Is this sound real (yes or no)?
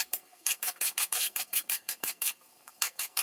no